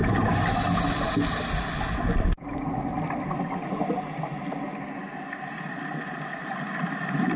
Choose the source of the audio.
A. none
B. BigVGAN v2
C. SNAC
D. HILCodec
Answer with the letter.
A